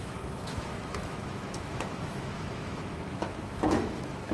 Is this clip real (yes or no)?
no